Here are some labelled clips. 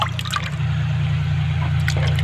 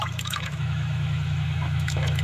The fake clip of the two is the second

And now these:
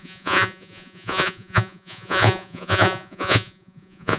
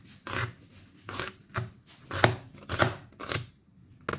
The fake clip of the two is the first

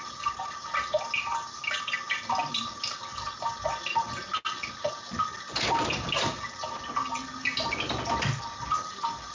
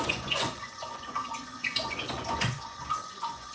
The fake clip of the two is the second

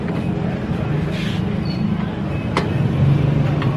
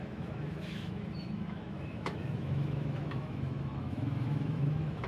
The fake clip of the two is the second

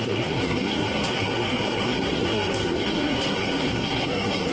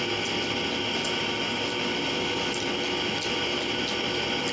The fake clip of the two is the first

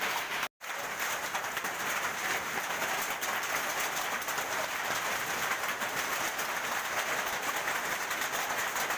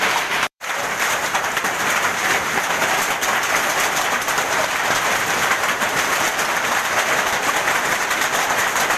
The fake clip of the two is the second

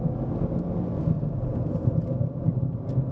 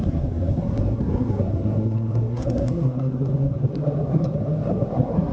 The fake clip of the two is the second